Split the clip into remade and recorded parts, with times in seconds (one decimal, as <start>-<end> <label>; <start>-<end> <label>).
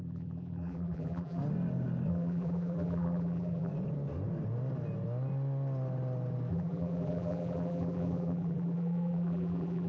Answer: 0.0-1.4 remade; 1.4-2.1 recorded; 2.1-3.7 remade; 3.7-6.5 recorded; 6.5-9.9 remade